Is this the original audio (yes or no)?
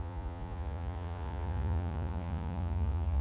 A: no